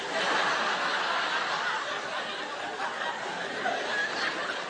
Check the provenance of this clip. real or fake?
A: real